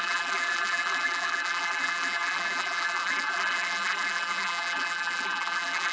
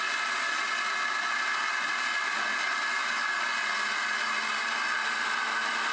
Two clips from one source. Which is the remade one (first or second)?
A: first